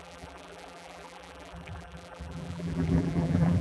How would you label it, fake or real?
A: fake